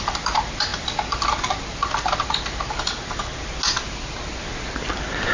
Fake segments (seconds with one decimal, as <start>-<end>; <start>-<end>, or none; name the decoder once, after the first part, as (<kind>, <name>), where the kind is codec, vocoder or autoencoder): none